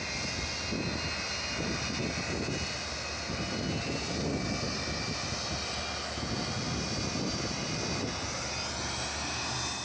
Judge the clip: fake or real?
real